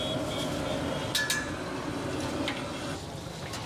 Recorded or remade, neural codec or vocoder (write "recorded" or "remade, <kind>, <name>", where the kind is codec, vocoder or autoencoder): recorded